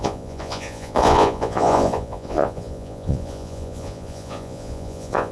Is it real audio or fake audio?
fake